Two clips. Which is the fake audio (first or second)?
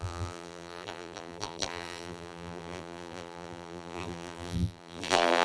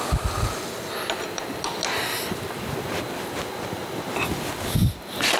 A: first